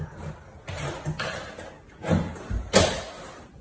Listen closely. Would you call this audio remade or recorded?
recorded